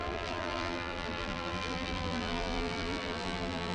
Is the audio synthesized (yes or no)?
yes